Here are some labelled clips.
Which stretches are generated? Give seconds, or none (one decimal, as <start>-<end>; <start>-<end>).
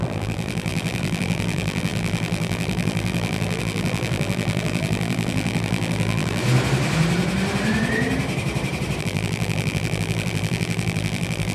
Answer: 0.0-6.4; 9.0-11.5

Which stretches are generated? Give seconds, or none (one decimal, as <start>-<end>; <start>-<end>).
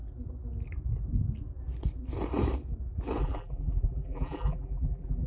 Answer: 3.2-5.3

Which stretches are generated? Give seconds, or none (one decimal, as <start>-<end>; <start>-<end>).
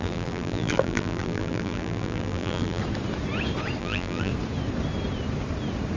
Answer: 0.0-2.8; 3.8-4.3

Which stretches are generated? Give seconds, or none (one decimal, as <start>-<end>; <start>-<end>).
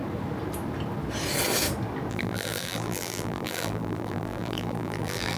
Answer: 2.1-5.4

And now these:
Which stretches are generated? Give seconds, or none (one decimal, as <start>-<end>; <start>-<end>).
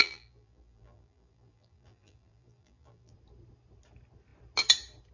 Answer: 0.0-3.1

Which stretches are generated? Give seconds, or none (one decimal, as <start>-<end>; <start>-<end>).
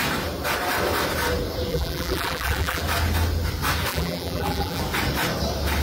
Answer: 1.7-2.8; 3.9-4.8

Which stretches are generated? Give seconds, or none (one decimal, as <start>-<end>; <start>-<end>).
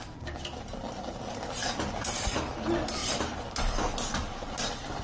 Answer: none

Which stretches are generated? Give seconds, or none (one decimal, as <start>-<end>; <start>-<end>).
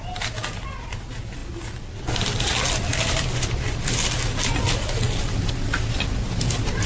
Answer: none